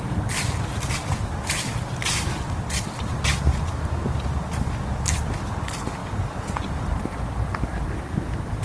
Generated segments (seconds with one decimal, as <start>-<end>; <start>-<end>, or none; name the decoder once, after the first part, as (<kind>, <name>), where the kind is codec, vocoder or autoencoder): none